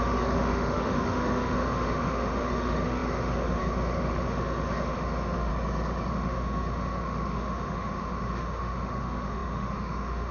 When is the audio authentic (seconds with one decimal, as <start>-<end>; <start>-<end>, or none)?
5.5-6.1